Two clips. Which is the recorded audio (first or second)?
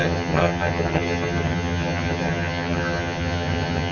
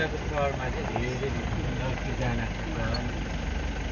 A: second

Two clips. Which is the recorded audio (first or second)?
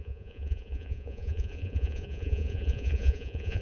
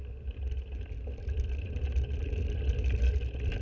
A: second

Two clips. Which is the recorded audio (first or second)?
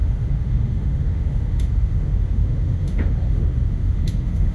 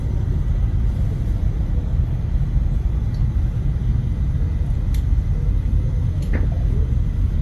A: second